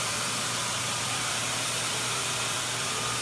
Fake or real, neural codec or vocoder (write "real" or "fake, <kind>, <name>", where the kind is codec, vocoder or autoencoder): fake, vocoder, BigVGAN v2